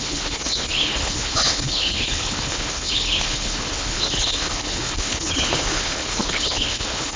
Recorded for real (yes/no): no